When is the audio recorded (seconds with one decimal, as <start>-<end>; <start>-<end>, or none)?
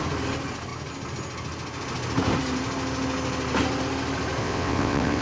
0.0-4.4